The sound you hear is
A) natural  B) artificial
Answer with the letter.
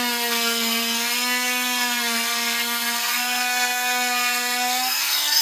B